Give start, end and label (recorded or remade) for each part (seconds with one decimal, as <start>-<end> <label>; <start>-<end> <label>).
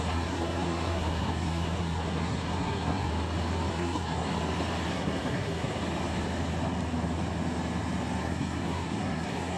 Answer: 0.0-3.1 remade; 3.1-3.7 recorded; 3.7-4.3 remade; 4.3-4.9 recorded; 4.9-5.8 remade; 5.8-8.2 recorded; 8.2-9.6 remade